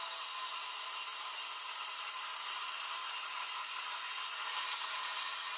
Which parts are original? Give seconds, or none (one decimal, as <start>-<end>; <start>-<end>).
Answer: 0.0-1.1; 3.4-5.6